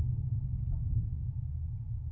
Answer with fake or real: real